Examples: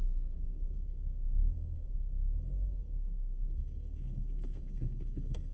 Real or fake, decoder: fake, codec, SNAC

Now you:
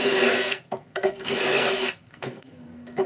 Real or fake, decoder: fake, codec, SNAC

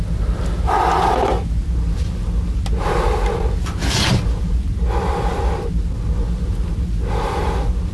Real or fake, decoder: real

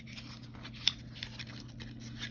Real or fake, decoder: real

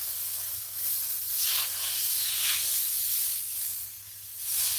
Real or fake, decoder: fake, codec, SNAC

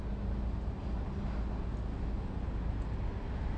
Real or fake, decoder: real